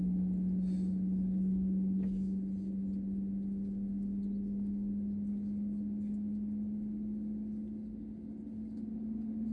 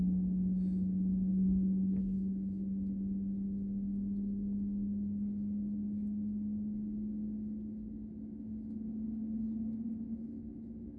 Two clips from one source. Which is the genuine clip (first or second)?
first